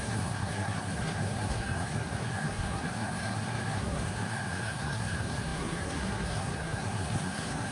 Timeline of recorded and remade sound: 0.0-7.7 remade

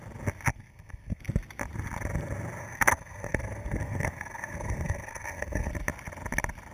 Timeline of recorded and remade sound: 0.0-0.5 recorded; 0.5-1.2 remade; 1.2-2.6 recorded; 2.6-5.7 remade; 5.7-6.7 recorded

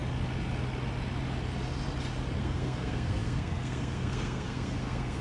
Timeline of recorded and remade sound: 0.0-2.4 recorded; 2.4-5.2 remade

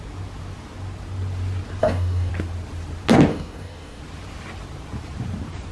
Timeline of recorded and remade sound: 0.0-1.8 recorded; 1.8-2.3 remade; 2.3-3.3 recorded; 3.3-4.0 remade; 4.0-5.7 recorded

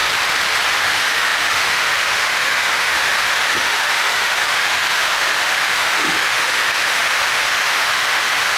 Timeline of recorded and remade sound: 0.0-0.7 recorded; 0.7-8.6 remade

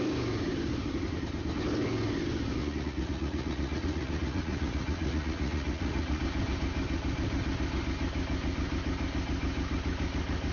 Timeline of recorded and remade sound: 0.0-2.6 recorded; 2.6-6.2 remade; 6.2-10.5 recorded

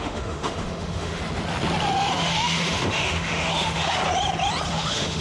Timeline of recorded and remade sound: 0.0-1.2 remade; 1.2-2.2 recorded; 2.2-4.0 remade; 4.0-4.7 recorded; 4.7-5.2 remade